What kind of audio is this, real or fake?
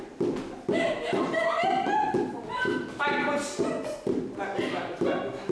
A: real